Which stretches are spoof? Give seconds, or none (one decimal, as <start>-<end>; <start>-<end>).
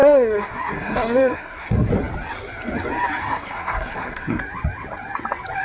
0.0-1.9; 3.2-4.4